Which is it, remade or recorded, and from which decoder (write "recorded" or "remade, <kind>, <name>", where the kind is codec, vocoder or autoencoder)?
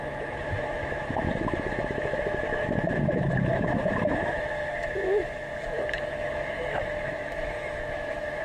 remade, autoencoder, DAC-VAE